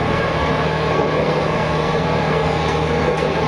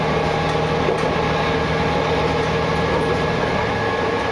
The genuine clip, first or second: second